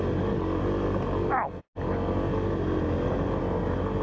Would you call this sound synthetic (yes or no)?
no